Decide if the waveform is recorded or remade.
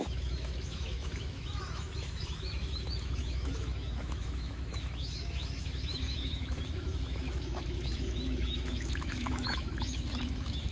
remade